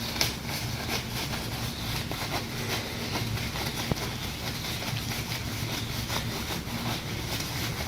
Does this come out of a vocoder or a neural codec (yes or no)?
no